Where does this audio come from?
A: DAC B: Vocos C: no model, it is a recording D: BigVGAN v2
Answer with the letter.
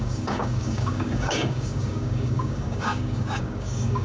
A